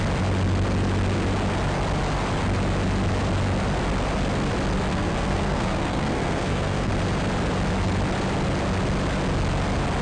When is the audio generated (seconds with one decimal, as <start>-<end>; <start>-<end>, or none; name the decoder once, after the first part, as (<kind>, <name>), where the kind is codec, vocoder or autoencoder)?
4.9-6.9 (codec, SNAC)